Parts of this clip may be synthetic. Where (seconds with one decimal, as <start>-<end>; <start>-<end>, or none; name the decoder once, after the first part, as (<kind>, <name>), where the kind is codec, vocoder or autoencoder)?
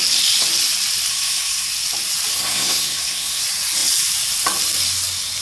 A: 1.1-1.7 (codec, SNAC); 2.3-3.4